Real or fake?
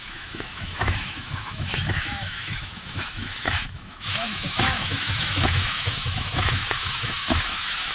fake